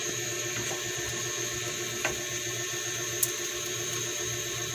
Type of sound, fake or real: real